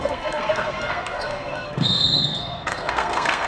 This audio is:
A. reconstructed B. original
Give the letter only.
A